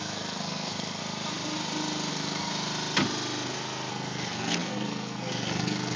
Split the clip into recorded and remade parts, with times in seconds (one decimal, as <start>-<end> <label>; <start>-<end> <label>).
0.0-1.0 remade; 1.0-2.1 recorded; 2.1-2.5 remade; 2.5-3.9 recorded; 3.9-6.0 remade